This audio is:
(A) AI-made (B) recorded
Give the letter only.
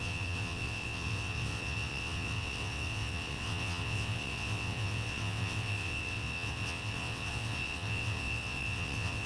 A